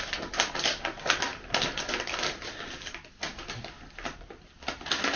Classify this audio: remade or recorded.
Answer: recorded